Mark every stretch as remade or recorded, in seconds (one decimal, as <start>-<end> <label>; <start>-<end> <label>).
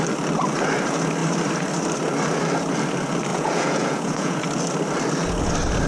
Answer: 0.0-3.3 recorded; 3.3-4.4 remade; 4.4-5.9 recorded